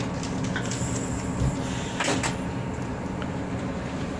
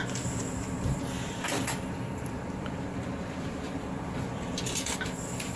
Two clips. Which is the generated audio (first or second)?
second